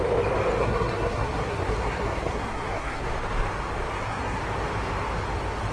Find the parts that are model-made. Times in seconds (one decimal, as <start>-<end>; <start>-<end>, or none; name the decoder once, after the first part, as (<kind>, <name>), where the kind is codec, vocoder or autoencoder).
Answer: 0.6-3.0 (codec, SNAC); 3.9-4.4